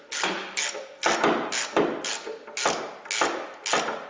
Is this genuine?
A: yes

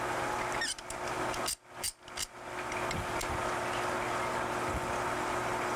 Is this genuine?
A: yes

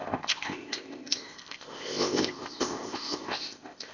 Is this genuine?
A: no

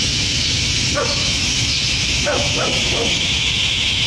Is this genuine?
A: no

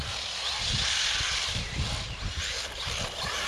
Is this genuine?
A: yes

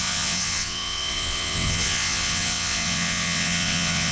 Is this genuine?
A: no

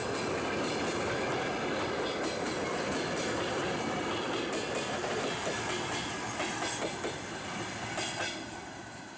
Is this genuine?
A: yes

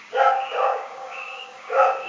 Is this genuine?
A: no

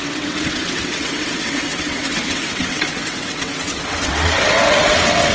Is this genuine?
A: no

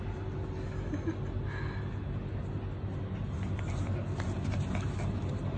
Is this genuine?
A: yes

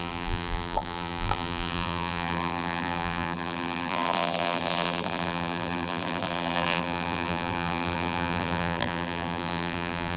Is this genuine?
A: no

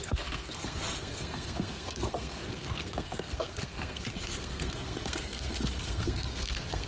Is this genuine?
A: no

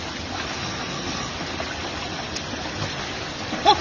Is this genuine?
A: yes